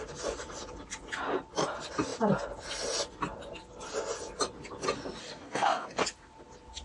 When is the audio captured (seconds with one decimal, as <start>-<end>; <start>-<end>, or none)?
0.0-5.2; 6.0-6.8